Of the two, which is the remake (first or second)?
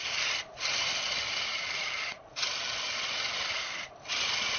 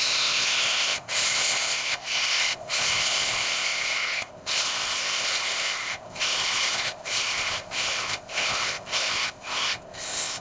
second